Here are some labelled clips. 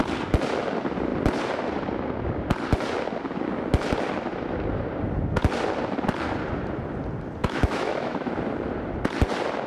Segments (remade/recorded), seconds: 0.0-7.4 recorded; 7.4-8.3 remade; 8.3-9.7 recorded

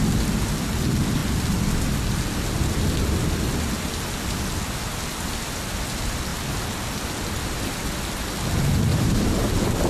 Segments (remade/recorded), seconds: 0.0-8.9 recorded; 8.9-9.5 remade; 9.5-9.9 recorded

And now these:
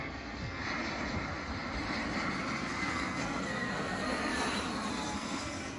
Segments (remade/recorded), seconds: 0.0-0.6 remade; 0.6-2.6 recorded; 2.6-4.3 remade; 4.3-4.9 recorded; 4.9-5.8 remade

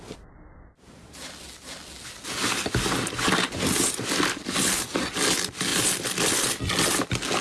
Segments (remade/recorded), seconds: 0.0-7.4 recorded

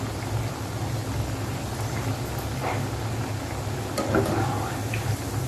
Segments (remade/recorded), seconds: 0.0-5.5 recorded

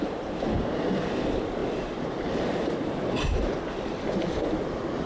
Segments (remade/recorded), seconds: 0.0-5.1 recorded